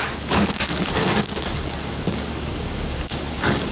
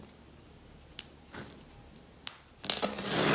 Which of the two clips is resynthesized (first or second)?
first